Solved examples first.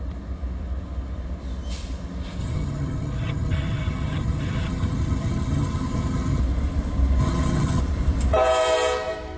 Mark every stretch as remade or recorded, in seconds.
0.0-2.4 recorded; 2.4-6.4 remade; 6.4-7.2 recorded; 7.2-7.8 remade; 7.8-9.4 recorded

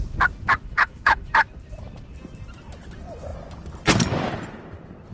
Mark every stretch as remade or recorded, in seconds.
0.0-0.6 recorded; 0.6-1.3 remade; 1.3-5.1 recorded

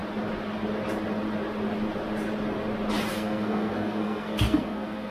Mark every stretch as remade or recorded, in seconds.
0.0-3.1 recorded; 3.1-5.1 remade

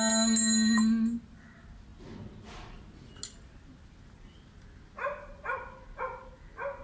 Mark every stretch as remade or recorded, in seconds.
0.0-6.8 recorded

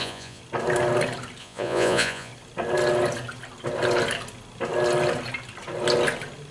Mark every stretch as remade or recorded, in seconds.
0.0-0.4 remade; 0.4-1.4 recorded; 1.4-2.3 remade; 2.3-6.5 recorded

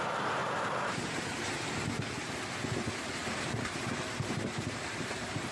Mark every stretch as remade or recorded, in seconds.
0.0-0.4 recorded; 0.4-1.2 remade; 1.2-3.2 recorded; 3.2-5.5 remade

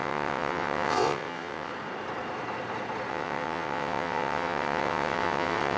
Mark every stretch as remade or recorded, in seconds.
0.0-1.7 remade; 1.7-3.1 recorded; 3.1-5.8 remade

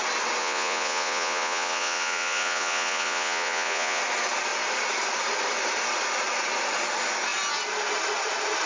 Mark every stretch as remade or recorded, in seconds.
0.0-0.4 recorded; 0.4-4.0 remade; 4.0-8.7 recorded